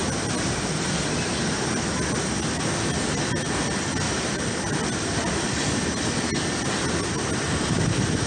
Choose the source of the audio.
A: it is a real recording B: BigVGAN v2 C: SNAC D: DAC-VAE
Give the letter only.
A